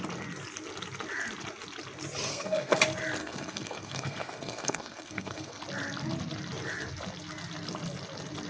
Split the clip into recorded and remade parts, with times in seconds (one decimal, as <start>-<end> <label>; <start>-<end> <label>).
0.0-2.3 recorded; 2.3-2.8 remade; 2.8-3.2 recorded; 3.2-5.6 remade; 5.6-8.5 recorded